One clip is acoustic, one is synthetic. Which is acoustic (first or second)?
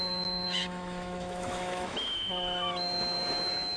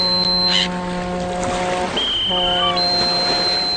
second